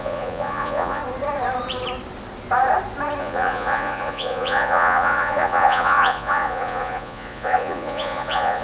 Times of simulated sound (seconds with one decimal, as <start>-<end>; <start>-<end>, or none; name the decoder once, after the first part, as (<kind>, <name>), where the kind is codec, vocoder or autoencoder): 0.0-1.0 (vocoder, Vocos); 3.2-8.6